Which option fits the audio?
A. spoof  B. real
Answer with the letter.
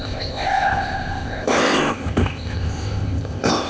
A